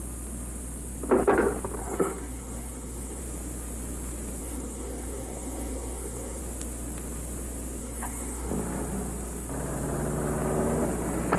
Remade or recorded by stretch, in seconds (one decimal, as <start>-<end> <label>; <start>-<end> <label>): 0.0-1.8 recorded; 1.8-3.2 remade; 3.2-4.4 recorded; 4.4-6.4 remade; 6.4-7.8 recorded; 7.8-8.5 remade; 8.5-11.4 recorded

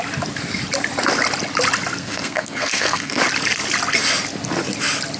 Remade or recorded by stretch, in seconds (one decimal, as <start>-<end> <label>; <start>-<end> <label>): 0.0-2.0 recorded; 2.0-3.2 remade; 3.2-5.2 recorded

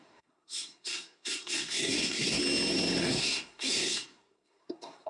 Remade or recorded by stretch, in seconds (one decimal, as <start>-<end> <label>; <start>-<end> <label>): 0.0-2.4 remade; 2.4-3.0 recorded; 3.0-5.1 remade

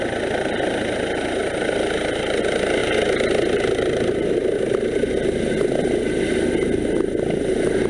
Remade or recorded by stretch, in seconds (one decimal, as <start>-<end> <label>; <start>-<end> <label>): 0.0-7.9 recorded

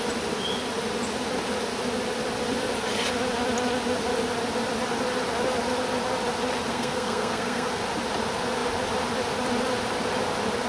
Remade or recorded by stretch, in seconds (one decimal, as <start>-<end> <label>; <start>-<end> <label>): 0.0-6.7 recorded; 6.7-7.8 remade; 7.8-10.7 recorded